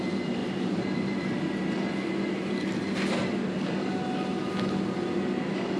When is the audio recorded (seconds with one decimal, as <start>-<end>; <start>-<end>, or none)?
0.0-0.4; 3.9-5.8